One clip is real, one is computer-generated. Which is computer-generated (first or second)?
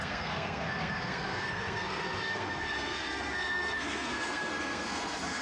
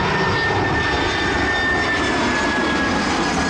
first